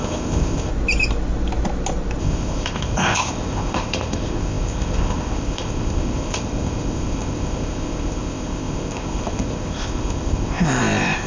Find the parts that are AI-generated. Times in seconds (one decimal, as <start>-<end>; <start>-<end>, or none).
0.0-0.7; 2.2-11.3